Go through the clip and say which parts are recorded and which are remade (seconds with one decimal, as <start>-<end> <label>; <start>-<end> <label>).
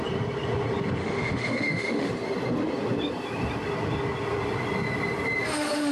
0.0-1.0 recorded; 1.0-2.1 remade; 2.1-5.9 recorded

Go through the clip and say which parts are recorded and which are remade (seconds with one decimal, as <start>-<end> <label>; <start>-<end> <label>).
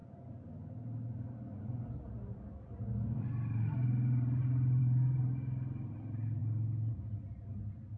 0.0-8.0 recorded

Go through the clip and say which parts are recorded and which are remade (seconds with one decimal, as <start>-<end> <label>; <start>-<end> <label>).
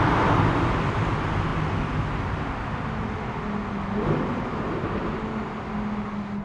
0.0-6.4 recorded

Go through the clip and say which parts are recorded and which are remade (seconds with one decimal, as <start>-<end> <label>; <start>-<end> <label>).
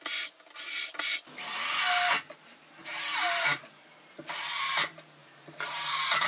0.0-2.8 recorded; 2.8-3.7 remade; 3.7-5.2 recorded; 5.2-6.3 remade